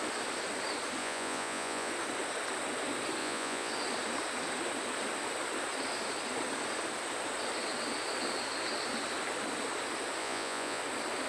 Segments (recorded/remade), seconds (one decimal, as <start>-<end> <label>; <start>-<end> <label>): 0.0-1.0 recorded; 1.0-1.9 remade; 1.9-3.2 recorded; 3.2-3.7 remade; 3.7-10.2 recorded; 10.2-10.8 remade; 10.8-11.3 recorded